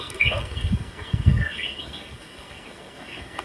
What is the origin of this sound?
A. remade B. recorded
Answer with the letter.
A